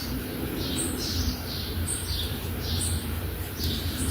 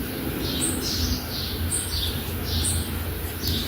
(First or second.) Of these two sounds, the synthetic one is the first